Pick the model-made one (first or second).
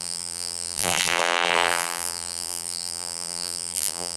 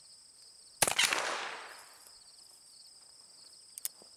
first